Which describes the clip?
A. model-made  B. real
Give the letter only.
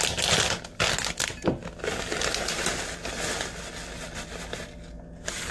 B